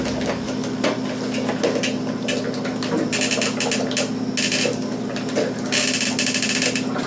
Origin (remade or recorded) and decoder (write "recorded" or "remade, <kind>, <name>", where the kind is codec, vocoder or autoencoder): recorded